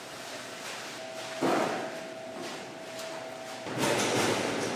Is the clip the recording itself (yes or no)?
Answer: yes